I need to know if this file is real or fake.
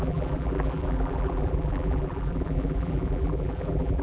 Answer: fake